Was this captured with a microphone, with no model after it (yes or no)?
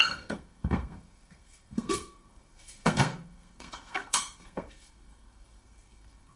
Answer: no